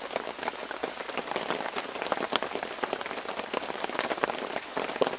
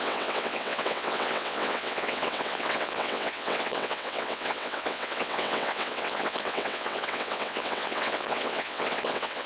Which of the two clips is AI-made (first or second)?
second